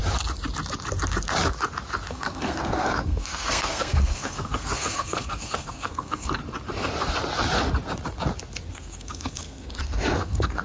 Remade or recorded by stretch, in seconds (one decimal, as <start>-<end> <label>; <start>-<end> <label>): 0.0-2.1 recorded; 2.1-6.4 remade; 6.4-8.7 recorded; 8.7-10.6 remade